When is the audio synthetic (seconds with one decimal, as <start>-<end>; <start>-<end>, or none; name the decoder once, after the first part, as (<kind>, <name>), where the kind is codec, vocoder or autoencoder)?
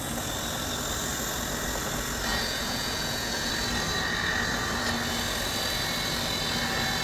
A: 2.3-3.5 (vocoder, Vocos)